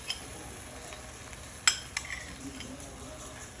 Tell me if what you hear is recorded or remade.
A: recorded